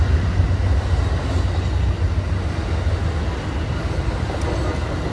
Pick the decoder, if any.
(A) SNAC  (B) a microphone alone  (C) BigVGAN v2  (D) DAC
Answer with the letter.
B